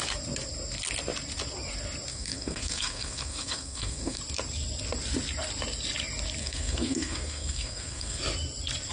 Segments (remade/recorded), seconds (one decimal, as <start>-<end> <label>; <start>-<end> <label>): 0.0-2.1 recorded; 2.1-4.2 remade; 4.2-6.4 recorded; 6.4-8.2 remade; 8.2-8.9 recorded